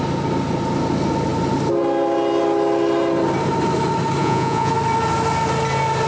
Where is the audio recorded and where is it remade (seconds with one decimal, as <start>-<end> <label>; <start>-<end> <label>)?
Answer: 0.0-4.2 recorded; 4.2-4.7 remade; 4.7-6.1 recorded